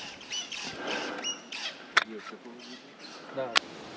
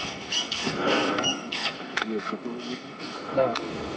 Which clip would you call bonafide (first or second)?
first